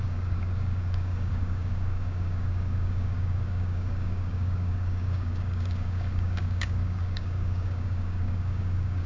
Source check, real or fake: fake